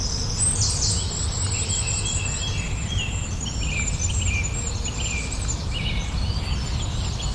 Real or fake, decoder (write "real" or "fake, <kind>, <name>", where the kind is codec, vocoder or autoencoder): real